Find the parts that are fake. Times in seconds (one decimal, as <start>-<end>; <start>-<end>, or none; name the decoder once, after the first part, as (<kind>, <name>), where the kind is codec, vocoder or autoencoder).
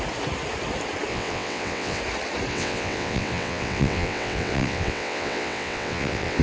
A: 1.1-2.0 (vocoder, WaveNeXt); 2.5-6.4